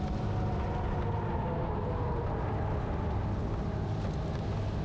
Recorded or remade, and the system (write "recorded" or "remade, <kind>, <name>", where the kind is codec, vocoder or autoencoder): recorded